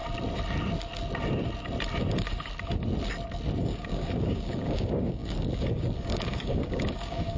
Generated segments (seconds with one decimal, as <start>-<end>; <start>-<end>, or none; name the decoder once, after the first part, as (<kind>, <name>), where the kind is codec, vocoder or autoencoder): 3.6-7.4 (codec, DAC)